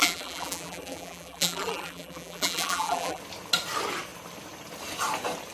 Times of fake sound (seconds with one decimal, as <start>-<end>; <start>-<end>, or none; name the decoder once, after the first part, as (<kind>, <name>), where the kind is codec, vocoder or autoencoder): 0.0-3.2 (vocoder, BigVGAN v2)